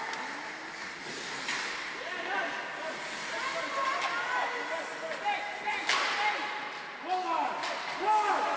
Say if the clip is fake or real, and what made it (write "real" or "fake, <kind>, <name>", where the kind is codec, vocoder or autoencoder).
real